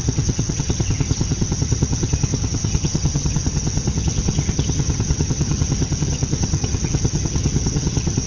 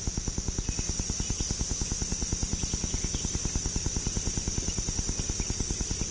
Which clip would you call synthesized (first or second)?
first